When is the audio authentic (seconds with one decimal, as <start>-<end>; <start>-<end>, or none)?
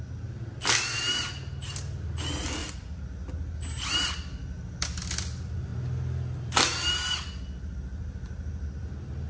0.0-9.3